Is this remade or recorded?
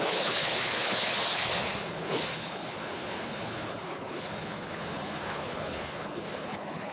remade